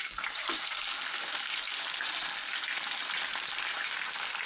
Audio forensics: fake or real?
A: real